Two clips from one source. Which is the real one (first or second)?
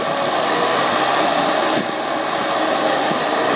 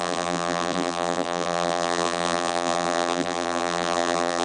first